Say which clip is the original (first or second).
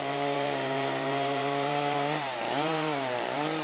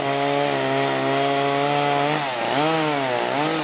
second